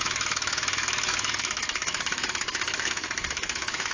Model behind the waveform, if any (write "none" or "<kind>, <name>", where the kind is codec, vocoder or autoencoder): autoencoder, DAC-VAE